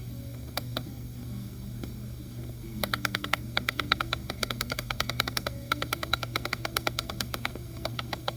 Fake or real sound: fake